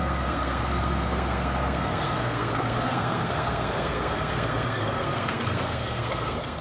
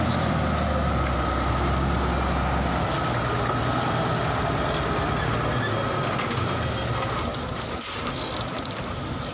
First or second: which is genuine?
second